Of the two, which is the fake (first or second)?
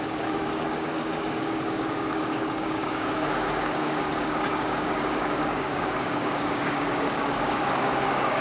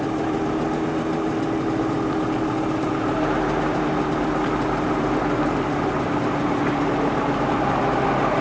first